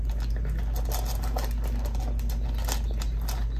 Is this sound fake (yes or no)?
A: no